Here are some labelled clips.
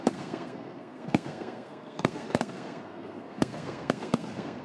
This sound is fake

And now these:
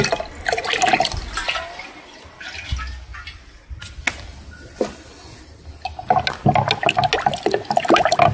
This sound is real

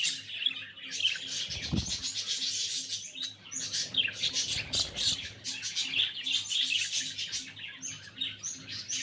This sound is real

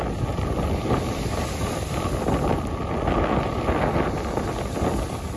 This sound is real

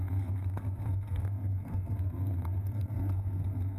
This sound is fake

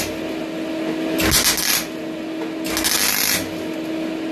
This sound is real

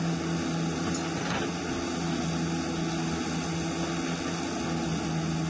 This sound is real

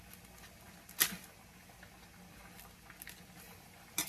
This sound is real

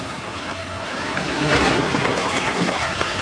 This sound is fake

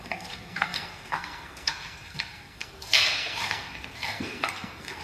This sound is fake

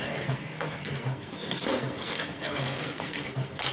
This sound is fake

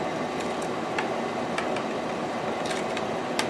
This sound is real